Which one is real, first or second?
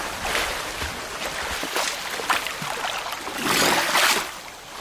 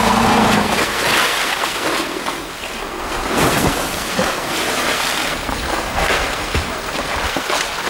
first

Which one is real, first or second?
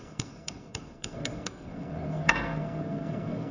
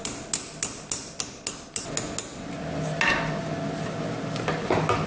second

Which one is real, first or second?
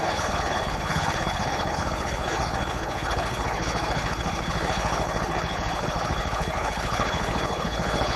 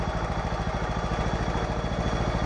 second